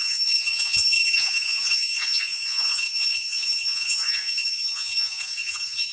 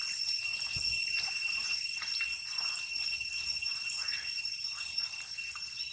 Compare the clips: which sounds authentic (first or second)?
second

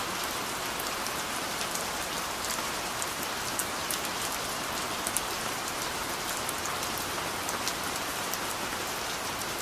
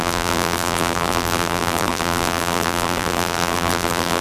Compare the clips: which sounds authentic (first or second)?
first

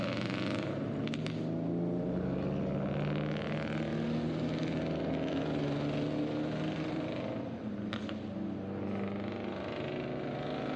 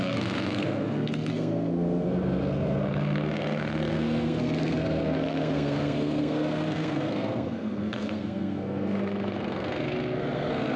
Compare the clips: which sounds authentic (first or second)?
first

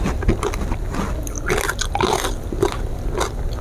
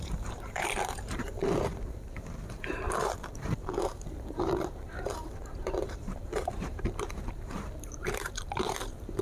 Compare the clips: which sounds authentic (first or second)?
first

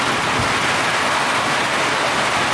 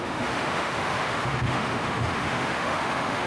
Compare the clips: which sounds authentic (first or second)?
first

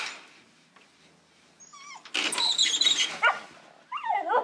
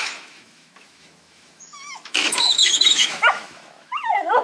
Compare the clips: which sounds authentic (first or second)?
first